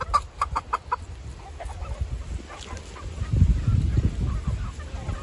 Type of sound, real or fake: real